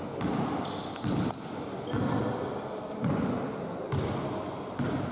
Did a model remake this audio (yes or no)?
no